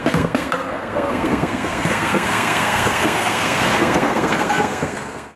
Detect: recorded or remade remade